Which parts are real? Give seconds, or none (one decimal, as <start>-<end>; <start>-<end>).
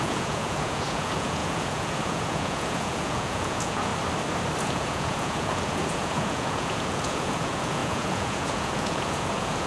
3.9-4.6